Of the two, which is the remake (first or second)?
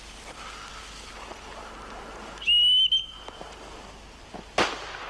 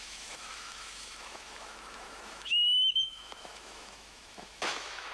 second